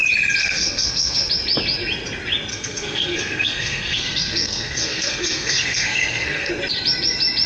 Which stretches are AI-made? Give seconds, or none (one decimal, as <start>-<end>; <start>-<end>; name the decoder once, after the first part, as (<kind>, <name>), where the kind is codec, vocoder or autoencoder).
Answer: 0.4-1.3 (codec, SNAC); 2.5-6.5